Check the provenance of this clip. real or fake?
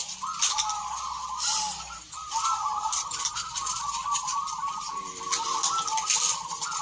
real